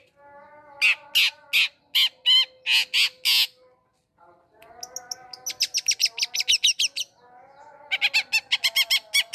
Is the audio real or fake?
real